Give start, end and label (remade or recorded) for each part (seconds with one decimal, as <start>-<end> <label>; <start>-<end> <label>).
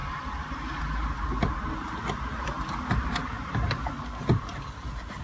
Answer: 0.0-5.2 recorded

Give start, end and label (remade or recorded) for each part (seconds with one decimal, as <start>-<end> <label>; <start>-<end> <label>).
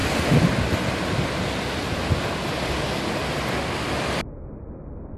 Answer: 0.0-5.2 recorded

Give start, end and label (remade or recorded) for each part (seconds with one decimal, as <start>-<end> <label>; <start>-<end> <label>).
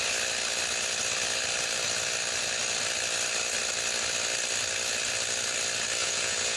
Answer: 0.0-6.0 recorded; 6.0-6.6 remade